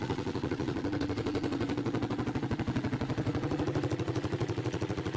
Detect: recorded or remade remade